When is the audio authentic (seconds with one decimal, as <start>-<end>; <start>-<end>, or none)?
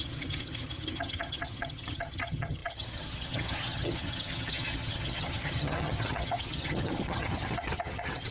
none